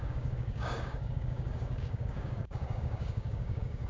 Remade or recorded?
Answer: remade